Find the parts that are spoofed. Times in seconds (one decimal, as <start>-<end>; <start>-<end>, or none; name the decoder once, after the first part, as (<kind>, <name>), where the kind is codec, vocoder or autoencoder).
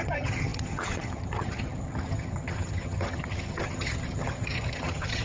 0.0-5.2 (vocoder, HiFi-GAN)